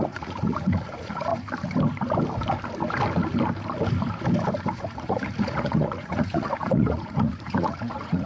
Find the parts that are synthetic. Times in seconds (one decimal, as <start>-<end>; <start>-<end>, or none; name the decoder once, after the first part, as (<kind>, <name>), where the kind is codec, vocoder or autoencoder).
0.0-1.3 (vocoder, Vocos); 4.8-8.3